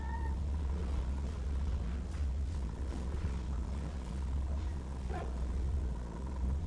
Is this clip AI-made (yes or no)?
yes